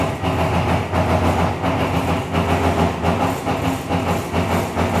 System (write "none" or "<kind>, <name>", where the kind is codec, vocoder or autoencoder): none